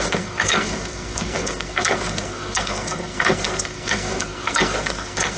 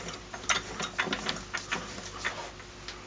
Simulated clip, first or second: first